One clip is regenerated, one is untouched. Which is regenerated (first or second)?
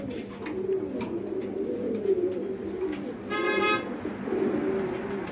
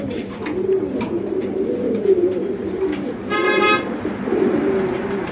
second